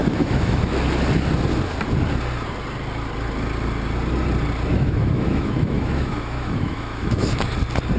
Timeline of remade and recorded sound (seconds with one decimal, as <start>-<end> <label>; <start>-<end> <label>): 0.0-0.7 remade; 0.7-4.7 recorded; 4.7-7.5 remade; 7.5-8.0 recorded